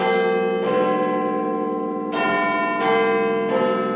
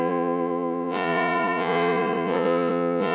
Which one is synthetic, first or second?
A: second